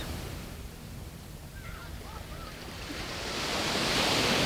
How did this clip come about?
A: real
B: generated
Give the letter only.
A